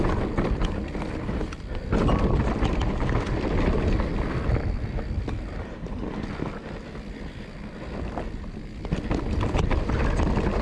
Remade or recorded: recorded